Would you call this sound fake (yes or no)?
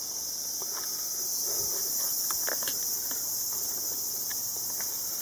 no